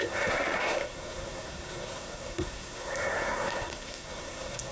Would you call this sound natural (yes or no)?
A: no